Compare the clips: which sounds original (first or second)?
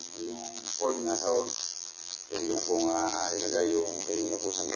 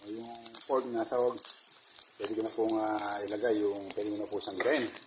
second